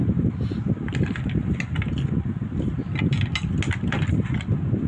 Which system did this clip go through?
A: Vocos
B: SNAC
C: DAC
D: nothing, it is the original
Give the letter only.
D